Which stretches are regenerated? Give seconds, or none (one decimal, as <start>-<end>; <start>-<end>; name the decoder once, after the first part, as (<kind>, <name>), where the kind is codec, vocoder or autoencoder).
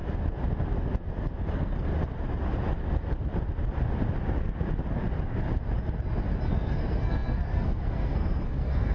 1.5-1.9 (codec, SNAC); 6.5-8.9